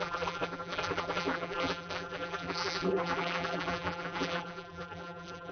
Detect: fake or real fake